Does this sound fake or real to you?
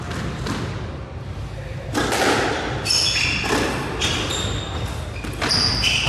real